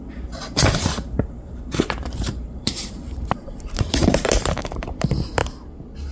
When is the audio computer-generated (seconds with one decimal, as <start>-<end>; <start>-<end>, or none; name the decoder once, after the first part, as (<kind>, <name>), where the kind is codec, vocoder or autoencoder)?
0.0-5.4 (vocoder, BigVGAN v2)